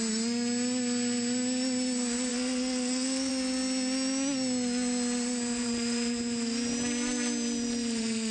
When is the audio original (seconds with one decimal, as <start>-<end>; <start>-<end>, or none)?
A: 0.0-2.3; 3.3-8.3

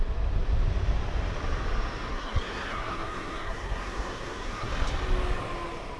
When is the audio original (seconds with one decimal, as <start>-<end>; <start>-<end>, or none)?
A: 0.0-2.1; 4.7-6.0

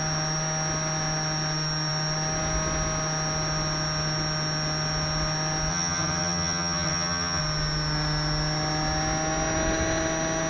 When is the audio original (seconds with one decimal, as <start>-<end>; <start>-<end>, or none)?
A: 0.0-5.7; 7.4-10.5

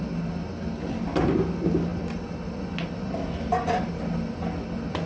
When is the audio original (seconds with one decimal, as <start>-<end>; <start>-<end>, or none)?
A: 0.0-5.1

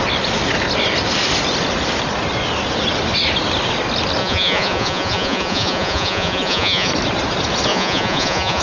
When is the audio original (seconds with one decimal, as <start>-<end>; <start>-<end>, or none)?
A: 0.0-4.2; 6.9-7.7

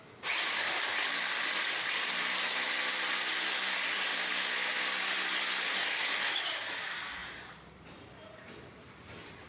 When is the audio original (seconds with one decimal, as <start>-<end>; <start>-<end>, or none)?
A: 0.0-9.5